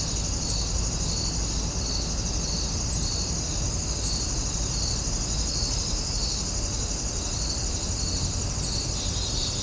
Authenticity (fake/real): real